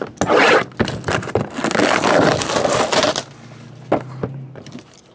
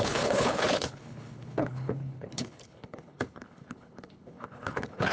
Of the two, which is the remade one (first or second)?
second